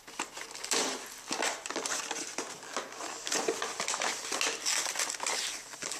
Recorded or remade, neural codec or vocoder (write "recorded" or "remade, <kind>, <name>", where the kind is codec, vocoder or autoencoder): recorded